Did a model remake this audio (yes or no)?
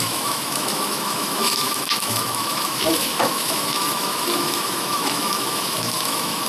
yes